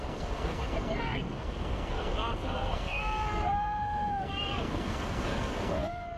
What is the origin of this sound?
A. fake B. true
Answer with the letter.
A